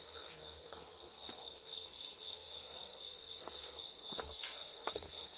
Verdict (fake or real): fake